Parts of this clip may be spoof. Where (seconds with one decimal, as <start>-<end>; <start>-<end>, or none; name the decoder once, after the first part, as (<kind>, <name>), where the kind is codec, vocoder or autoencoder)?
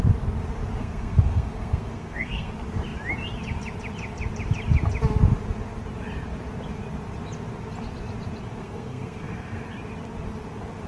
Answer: 0.8-2.5 (codec, SNAC); 8.6-9.6